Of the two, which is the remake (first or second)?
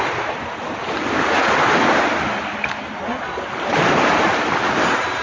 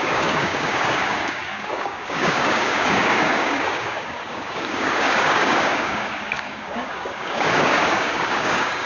second